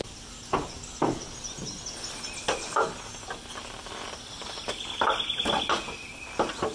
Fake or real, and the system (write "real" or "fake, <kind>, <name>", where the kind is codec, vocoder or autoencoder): real